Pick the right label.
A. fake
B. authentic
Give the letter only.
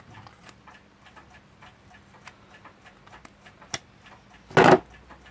B